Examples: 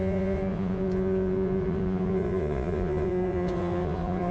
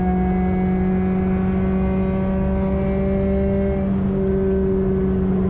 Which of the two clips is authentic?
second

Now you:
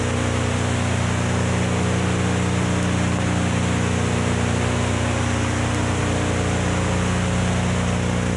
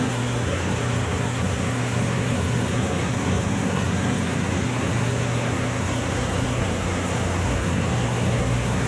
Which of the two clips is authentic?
first